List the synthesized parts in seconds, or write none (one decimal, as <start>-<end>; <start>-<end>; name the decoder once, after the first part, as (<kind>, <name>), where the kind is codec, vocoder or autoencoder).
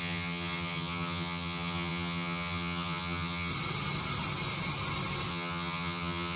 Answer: 0.0-3.5 (vocoder, HiFi-GAN); 5.3-6.4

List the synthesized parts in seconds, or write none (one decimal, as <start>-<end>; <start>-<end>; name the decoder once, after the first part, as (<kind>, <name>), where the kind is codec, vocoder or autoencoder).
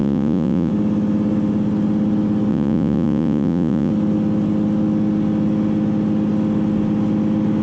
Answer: 0.0-0.7 (vocoder, Vocos); 2.5-3.9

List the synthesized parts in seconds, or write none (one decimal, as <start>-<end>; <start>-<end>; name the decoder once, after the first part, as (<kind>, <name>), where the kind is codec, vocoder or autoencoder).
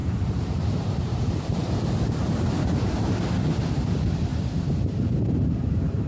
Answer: 0.0-1.7 (vocoder, BigVGAN v2); 4.3-6.1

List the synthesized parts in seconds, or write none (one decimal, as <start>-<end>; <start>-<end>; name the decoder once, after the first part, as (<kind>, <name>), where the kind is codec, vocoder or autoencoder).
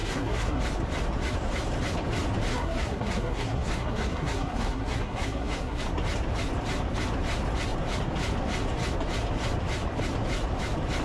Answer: 0.0-0.6 (codec, SNAC); 2.5-5.8